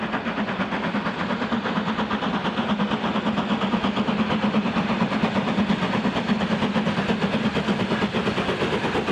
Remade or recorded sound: recorded